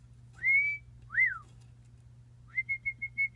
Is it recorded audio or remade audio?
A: recorded